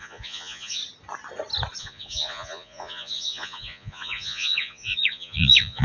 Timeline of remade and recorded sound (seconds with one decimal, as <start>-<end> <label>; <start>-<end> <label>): 0.0-0.8 remade; 0.8-1.8 recorded; 1.8-5.8 remade